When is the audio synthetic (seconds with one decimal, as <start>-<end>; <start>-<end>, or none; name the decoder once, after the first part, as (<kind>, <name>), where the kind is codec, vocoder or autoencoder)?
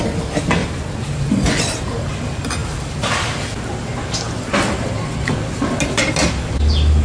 0.6-1.2 (vocoder, BigVGAN v2)